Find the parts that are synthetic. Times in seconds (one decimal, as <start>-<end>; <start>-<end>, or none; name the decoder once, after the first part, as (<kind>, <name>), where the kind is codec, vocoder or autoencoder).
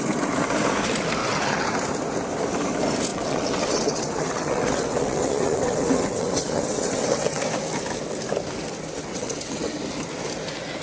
1.2-1.7 (vocoder, WaveNeXt); 3.1-7.4; 9.1-9.8